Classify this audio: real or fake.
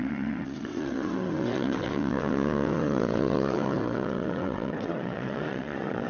fake